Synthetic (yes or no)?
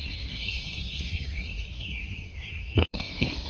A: yes